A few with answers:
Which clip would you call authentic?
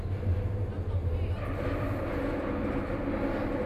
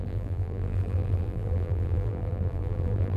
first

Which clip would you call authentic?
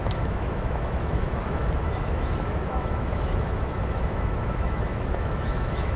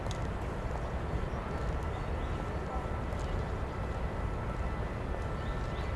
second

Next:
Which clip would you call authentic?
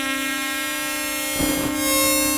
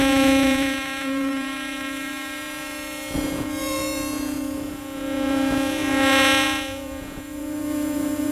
first